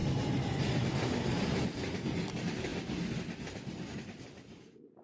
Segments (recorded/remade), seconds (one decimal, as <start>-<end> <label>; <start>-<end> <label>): 0.0-5.0 recorded